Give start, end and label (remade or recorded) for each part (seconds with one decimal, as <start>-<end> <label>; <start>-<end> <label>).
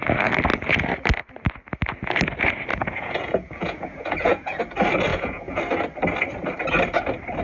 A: 0.0-2.7 recorded; 2.7-4.6 remade; 4.6-5.1 recorded; 5.1-5.6 remade; 5.6-7.4 recorded